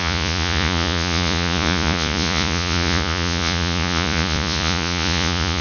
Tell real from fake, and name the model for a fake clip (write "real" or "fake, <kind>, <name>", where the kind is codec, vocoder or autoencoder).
fake, vocoder, Vocos